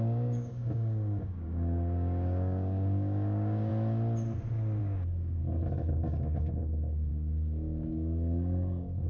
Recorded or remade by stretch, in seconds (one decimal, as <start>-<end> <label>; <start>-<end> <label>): 0.0-3.7 remade; 3.7-4.8 recorded; 4.8-5.4 remade; 5.4-5.9 recorded; 5.9-9.1 remade